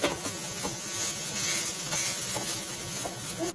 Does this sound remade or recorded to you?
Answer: remade